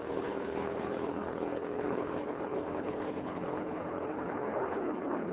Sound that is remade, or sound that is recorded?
remade